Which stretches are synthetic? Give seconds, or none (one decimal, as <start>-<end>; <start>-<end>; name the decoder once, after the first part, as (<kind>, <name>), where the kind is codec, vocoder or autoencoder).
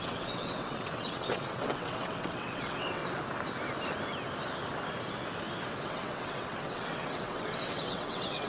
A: 0.0-3.0 (vocoder, WaveNeXt); 5.9-8.5